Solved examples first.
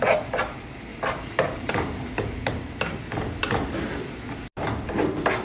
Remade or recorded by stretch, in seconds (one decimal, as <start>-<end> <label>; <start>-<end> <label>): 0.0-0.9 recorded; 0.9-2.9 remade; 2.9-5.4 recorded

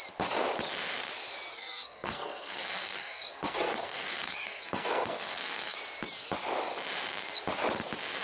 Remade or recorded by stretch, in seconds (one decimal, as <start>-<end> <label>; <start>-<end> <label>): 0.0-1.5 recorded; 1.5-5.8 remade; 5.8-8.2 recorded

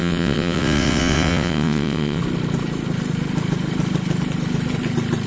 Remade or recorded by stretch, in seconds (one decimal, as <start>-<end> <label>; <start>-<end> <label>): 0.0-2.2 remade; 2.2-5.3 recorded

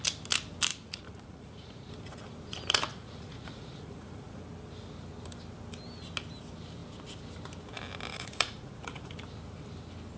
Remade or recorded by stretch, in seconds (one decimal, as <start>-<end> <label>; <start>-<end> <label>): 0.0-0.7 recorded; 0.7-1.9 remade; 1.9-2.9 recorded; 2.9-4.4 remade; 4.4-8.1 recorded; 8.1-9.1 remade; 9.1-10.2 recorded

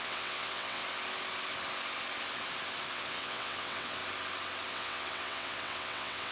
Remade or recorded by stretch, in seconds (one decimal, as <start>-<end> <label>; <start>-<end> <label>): 0.0-0.8 remade; 0.8-2.9 recorded; 2.9-4.0 remade; 4.0-4.7 recorded; 4.7-6.3 remade